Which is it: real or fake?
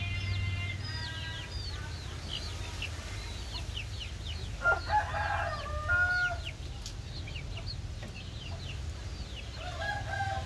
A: real